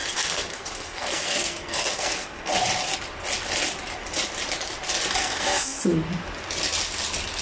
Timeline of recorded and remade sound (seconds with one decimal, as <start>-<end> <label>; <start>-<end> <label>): 0.0-2.5 remade; 2.5-5.2 recorded; 5.2-5.8 remade; 5.8-7.4 recorded